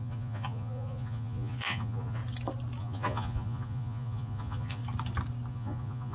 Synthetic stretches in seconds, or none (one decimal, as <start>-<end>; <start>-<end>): 0.0-2.2; 2.8-4.8; 5.5-6.1